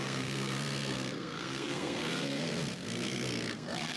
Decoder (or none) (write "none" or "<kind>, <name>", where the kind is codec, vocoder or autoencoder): codec, SNAC